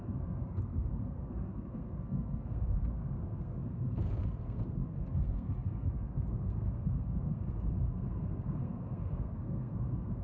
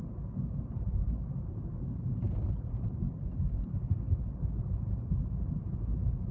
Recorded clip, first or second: second